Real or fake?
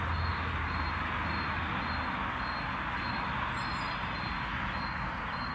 real